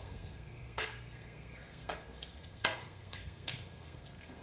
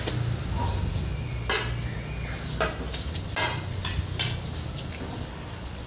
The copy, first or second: first